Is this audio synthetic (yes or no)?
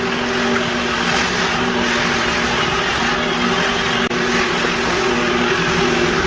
no